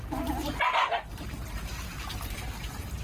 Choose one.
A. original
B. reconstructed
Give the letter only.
B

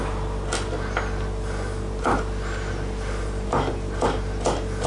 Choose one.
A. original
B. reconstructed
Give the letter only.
A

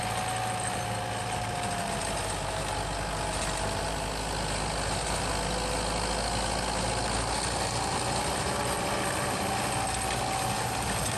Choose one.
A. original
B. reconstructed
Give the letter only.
A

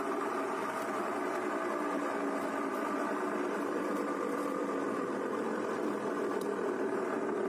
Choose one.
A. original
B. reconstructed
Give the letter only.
B